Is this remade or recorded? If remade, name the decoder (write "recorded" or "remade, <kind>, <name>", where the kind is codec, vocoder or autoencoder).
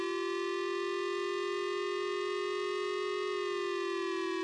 recorded